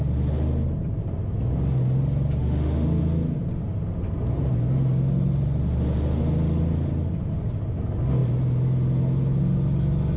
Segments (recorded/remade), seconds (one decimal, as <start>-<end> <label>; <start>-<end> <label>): 0.0-2.4 recorded; 2.4-3.0 remade; 3.0-10.2 recorded